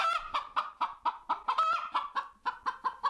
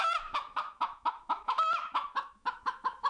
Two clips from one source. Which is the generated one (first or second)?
second